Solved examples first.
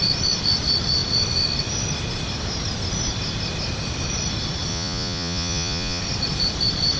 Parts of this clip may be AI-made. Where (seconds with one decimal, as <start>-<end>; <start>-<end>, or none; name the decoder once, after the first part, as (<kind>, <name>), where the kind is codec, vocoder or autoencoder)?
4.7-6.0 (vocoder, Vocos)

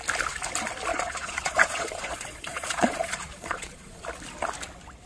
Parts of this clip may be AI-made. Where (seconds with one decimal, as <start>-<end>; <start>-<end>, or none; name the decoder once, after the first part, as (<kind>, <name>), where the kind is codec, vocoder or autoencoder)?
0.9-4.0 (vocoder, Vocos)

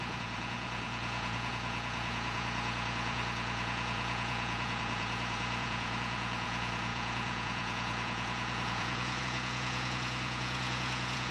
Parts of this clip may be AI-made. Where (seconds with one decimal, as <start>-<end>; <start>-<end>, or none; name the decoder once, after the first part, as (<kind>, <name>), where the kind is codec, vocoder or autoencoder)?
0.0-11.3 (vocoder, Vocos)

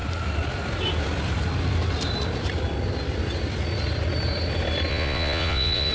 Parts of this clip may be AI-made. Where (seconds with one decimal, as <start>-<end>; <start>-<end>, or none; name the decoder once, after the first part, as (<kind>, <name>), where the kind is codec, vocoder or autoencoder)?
4.9-5.9 (vocoder, Vocos)

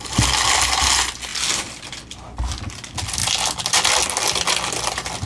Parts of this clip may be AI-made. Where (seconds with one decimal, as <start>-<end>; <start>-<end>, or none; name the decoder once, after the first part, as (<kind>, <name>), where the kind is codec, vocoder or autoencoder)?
none

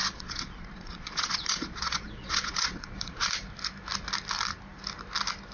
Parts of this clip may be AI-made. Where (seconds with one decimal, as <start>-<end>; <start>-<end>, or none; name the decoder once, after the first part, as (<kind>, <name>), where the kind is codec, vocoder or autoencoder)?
0.0-3.3 (vocoder, Vocos)